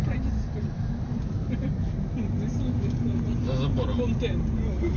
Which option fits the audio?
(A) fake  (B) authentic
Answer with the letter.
B